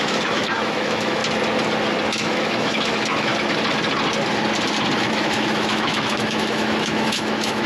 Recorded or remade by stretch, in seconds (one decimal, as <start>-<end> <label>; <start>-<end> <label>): 0.0-1.2 remade; 1.2-2.1 recorded; 2.1-3.3 remade; 3.3-5.0 recorded; 5.0-7.7 remade